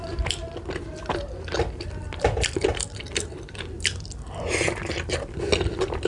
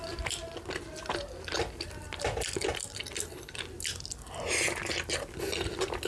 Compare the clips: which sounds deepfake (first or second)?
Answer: first